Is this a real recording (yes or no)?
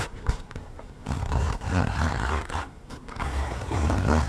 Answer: no